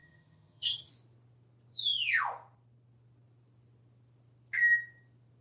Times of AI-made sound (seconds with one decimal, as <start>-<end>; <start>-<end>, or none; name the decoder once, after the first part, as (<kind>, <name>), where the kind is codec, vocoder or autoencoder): 0.0-0.9 (vocoder, HiFi-GAN)